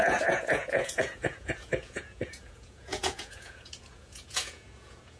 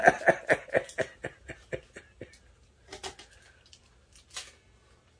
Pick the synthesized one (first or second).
first